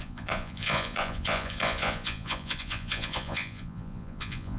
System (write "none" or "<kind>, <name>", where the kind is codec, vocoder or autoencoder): vocoder, Vocos